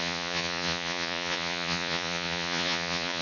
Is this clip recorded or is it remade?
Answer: remade